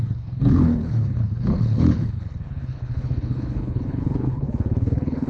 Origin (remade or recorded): remade